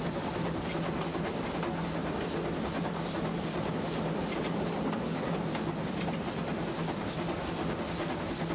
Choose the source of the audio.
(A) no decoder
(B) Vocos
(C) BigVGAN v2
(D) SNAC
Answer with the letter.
A